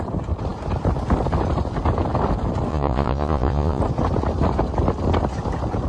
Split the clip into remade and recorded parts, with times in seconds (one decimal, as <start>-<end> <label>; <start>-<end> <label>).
0.0-2.7 recorded; 2.7-3.8 remade; 3.8-5.9 recorded